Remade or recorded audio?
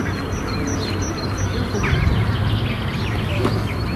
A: recorded